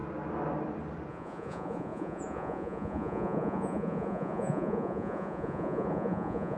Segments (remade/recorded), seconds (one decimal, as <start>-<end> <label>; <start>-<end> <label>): 0.0-1.1 recorded; 1.1-6.6 remade